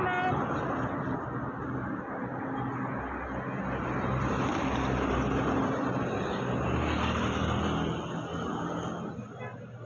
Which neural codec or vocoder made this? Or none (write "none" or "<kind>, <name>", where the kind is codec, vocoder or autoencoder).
none